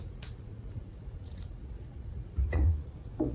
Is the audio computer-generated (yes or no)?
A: yes